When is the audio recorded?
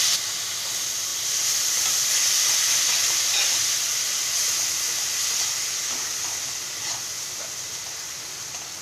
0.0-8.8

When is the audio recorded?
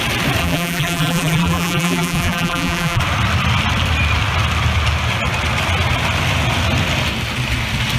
0.0-0.4; 3.0-8.0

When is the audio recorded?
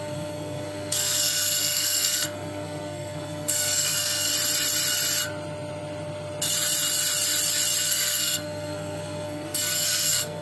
4.3-7.8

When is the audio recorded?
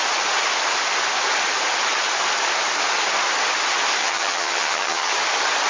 0.0-4.0; 5.1-5.7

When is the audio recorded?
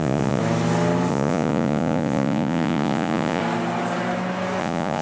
0.4-1.1; 3.4-4.6